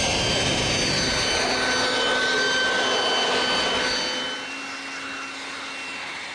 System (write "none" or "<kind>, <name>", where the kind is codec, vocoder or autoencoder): none